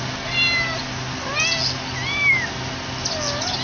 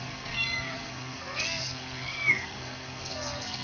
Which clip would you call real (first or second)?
first